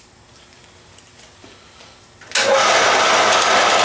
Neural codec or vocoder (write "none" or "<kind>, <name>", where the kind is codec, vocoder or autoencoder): none